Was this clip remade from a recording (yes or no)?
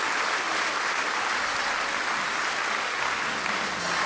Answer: no